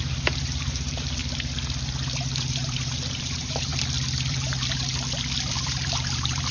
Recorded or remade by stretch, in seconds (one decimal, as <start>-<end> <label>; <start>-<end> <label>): 0.0-1.2 remade; 1.2-2.5 recorded; 2.5-3.7 remade; 3.7-4.3 recorded; 4.3-4.9 remade; 4.9-5.5 recorded; 5.5-6.5 remade